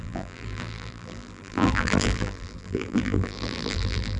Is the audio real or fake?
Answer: fake